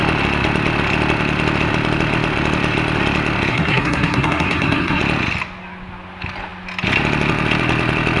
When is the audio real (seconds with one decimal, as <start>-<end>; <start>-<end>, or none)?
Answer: 0.0-3.5; 5.0-8.2